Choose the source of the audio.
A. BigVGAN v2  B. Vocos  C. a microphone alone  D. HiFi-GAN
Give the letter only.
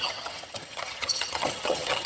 D